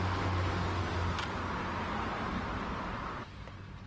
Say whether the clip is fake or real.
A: real